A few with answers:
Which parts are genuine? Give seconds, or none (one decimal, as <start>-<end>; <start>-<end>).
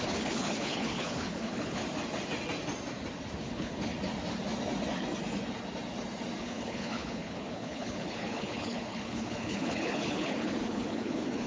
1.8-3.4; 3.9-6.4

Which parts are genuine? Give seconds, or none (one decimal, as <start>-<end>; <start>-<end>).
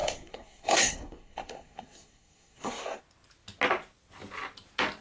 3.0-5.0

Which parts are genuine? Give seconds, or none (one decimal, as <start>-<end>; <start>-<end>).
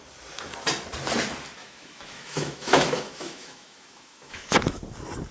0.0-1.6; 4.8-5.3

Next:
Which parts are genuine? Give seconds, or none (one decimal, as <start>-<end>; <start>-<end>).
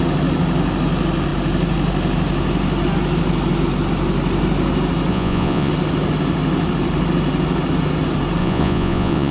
0.0-5.1; 5.7-8.4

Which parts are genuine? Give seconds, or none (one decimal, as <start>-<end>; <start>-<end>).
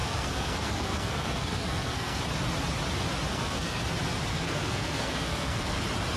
2.2-3.3; 3.8-4.3; 5.8-6.2